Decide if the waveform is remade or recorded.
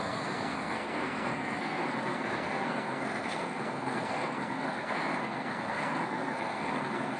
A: remade